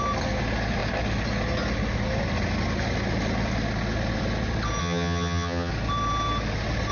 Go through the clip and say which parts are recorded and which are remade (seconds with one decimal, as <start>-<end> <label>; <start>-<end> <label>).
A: 0.0-4.8 recorded; 4.8-5.7 remade; 5.7-6.9 recorded